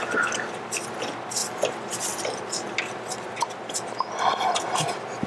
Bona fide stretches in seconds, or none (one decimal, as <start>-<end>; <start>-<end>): 0.0-5.3